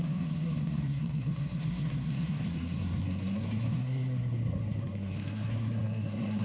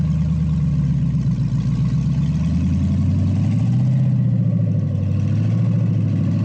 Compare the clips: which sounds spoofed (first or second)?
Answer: first